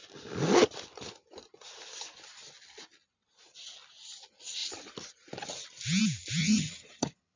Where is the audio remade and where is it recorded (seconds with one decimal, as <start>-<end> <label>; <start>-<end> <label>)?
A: 0.0-6.4 recorded; 6.4-7.4 remade